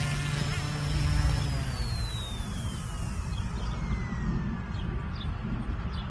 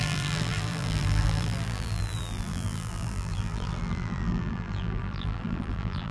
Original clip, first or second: first